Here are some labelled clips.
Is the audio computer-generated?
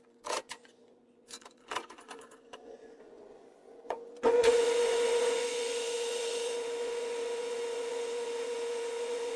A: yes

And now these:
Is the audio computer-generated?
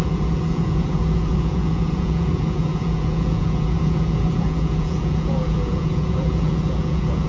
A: yes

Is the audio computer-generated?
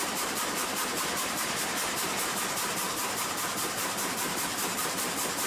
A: yes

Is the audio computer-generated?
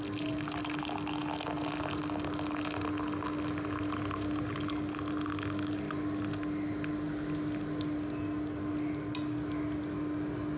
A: no